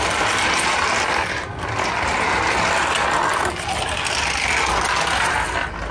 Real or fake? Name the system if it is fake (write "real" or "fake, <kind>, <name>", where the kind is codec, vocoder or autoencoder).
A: real